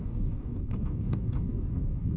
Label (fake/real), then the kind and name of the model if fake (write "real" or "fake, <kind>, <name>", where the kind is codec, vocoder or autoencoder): fake, codec, DAC